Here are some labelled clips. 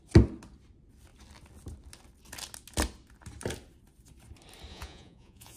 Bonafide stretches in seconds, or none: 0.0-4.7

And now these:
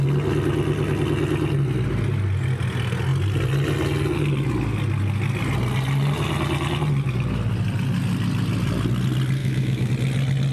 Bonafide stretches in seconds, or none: 0.0-9.4; 9.9-10.5

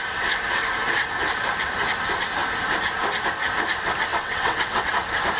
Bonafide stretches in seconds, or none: 0.0-4.1; 4.9-5.4